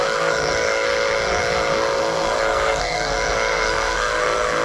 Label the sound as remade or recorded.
remade